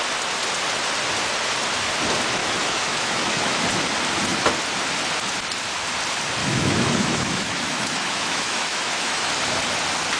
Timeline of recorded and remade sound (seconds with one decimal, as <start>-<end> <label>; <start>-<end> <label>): 0.0-2.4 recorded; 2.4-3.6 remade; 3.6-6.4 recorded; 6.4-9.3 remade; 9.3-10.2 recorded